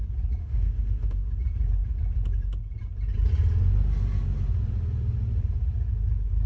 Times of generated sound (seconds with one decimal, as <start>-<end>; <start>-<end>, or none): 0.4-1.3